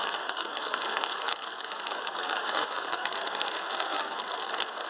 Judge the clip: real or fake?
fake